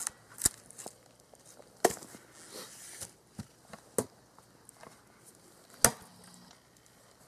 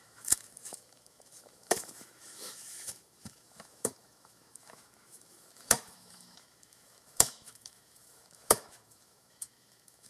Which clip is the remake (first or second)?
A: second